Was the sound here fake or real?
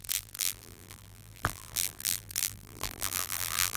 fake